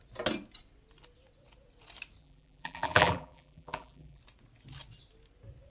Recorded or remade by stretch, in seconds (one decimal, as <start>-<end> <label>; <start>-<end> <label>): 0.0-2.2 recorded; 2.2-4.2 remade; 4.2-5.7 recorded